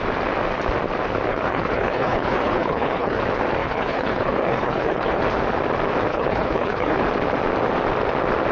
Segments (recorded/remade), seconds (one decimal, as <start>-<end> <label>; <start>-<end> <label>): 0.0-1.3 recorded; 1.3-3.2 remade; 3.2-3.6 recorded; 3.6-5.2 remade; 5.2-6.1 recorded; 6.1-7.0 remade; 7.0-8.5 recorded